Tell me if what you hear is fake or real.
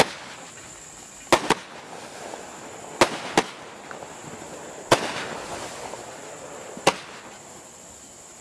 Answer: real